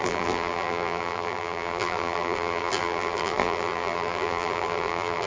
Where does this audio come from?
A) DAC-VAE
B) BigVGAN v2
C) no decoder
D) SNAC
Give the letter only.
B